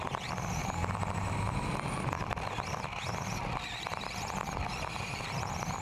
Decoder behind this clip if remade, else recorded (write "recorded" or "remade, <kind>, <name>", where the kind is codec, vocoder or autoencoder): recorded